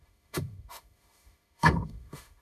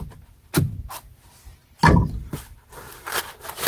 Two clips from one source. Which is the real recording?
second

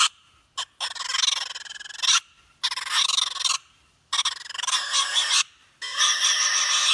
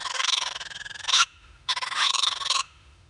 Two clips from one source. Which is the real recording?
first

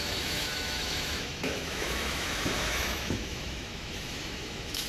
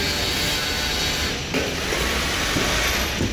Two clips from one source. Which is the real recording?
second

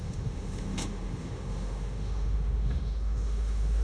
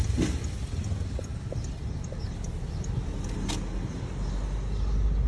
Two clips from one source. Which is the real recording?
second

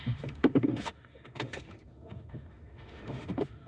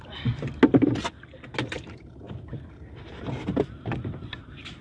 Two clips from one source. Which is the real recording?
second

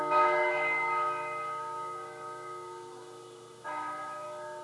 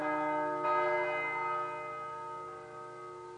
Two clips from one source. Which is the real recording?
second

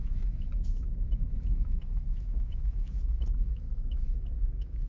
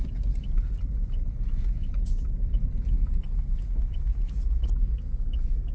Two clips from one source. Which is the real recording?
second